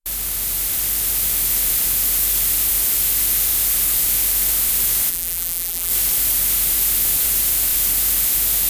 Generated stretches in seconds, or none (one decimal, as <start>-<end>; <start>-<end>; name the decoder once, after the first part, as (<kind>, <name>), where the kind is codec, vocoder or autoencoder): 5.1-5.9 (vocoder, BigVGAN v2)